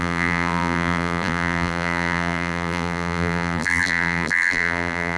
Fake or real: fake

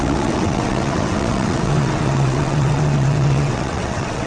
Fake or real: fake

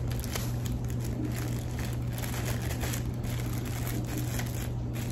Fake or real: real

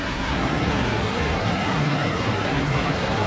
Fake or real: fake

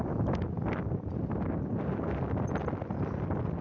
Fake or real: real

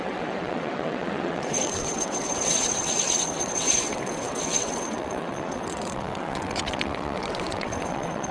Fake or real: fake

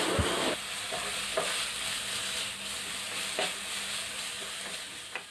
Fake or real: real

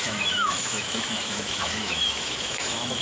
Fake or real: fake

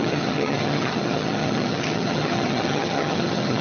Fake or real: fake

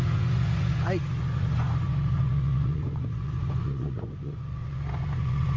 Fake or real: fake